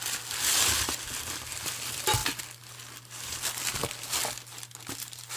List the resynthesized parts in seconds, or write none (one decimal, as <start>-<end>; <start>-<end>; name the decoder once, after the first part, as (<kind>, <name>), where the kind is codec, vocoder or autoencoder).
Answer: none